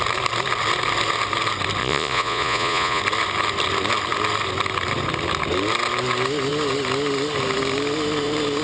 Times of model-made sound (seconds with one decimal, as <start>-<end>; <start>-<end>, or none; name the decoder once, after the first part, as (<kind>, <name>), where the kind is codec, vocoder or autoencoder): 1.8-3.0 (vocoder, Vocos)

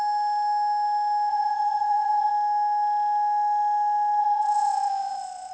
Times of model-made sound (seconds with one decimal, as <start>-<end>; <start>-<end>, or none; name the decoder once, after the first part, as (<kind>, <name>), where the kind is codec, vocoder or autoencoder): 1.3-2.3 (vocoder, Vocos); 4.2-5.5

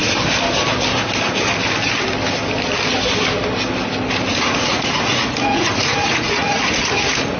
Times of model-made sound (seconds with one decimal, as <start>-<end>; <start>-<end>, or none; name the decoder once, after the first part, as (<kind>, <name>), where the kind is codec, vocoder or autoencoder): 4.3-7.4 (vocoder, Vocos)

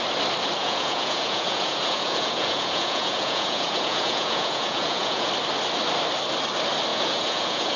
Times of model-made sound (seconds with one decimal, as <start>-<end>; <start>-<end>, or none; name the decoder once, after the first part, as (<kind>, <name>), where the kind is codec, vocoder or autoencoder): 0.6-5.3 (vocoder, Vocos); 6.9-7.8

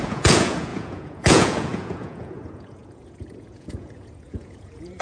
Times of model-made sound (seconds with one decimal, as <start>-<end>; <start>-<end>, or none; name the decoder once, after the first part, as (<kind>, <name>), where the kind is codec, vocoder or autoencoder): 0.0-5.0 (vocoder, Vocos)